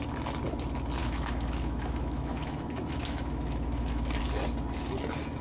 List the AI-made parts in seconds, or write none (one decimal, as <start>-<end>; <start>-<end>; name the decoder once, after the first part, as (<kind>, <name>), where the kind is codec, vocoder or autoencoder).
1.0-4.2 (autoencoder, DAC-VAE)